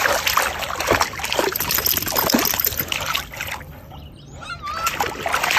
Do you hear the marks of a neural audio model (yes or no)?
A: no